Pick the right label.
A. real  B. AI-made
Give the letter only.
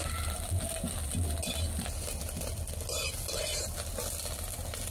A